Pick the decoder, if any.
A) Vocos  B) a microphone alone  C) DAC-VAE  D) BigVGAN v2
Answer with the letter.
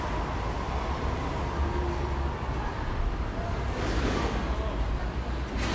B